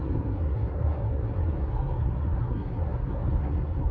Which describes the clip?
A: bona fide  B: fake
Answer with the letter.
B